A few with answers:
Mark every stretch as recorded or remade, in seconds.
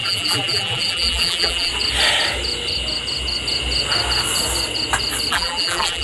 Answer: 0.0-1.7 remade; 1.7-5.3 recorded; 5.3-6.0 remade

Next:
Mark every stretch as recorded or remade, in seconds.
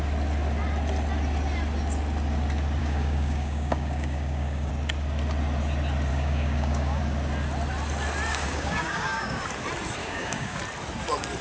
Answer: 0.0-2.8 recorded; 2.8-4.7 remade; 4.7-6.1 recorded; 6.1-7.0 remade; 7.0-8.3 recorded; 8.3-9.4 remade; 9.4-10.0 recorded; 10.0-10.6 remade; 10.6-11.4 recorded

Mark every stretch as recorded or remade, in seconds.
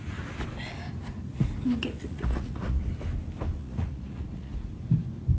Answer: 0.0-2.0 recorded; 2.0-2.9 remade; 2.9-3.6 recorded; 3.6-4.5 remade; 4.5-5.4 recorded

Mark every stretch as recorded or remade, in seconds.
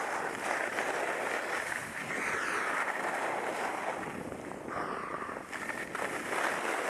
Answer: 0.0-6.9 recorded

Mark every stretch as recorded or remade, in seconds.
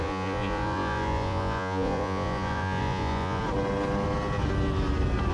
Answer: 0.0-3.4 remade; 3.4-5.3 recorded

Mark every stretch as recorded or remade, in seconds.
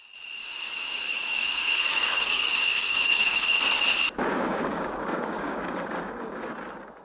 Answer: 0.0-0.4 recorded; 0.4-3.6 remade; 3.6-4.3 recorded; 4.3-6.5 remade; 6.5-7.0 recorded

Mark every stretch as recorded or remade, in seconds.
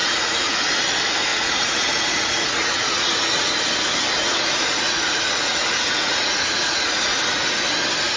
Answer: 0.0-0.6 remade; 0.6-1.3 recorded; 1.3-3.5 remade; 3.5-4.2 recorded; 4.2-7.6 remade; 7.6-8.2 recorded